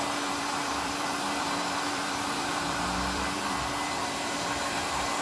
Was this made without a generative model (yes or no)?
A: no